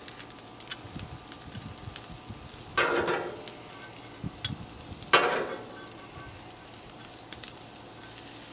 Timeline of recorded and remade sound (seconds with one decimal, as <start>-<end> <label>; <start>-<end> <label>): 0.0-8.5 recorded